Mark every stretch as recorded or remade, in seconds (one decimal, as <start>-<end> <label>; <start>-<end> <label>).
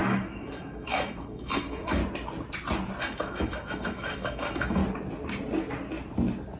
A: 0.0-2.0 remade; 2.0-3.0 recorded; 3.0-4.8 remade; 4.8-6.6 recorded